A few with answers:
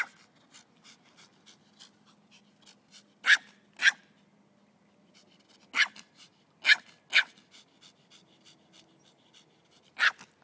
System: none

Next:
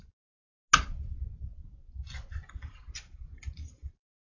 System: none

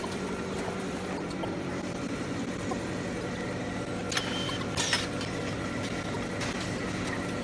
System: none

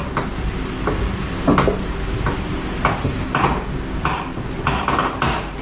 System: none